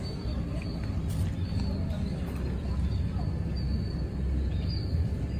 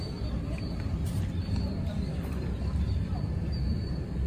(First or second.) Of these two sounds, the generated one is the second